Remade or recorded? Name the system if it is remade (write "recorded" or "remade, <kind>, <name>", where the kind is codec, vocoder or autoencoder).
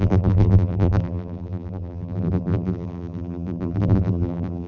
remade, vocoder, BigVGAN v2